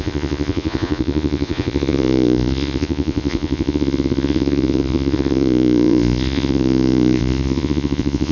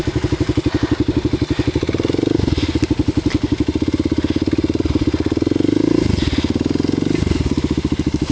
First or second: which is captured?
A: second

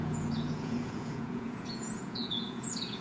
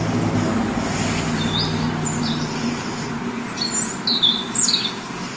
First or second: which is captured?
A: second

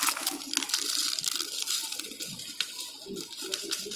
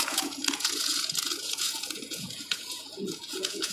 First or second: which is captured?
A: first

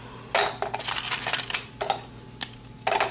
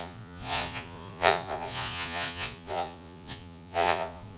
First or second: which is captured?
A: first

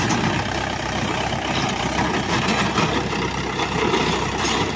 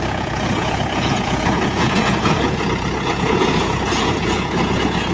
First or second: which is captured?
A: first